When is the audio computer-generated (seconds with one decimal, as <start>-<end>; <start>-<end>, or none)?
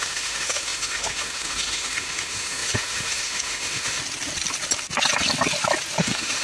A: 0.0-4.0; 6.0-6.4